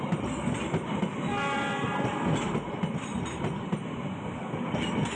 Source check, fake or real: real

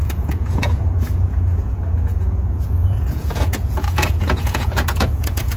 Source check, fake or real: fake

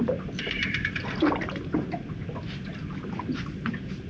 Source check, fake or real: real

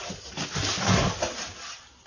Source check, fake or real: real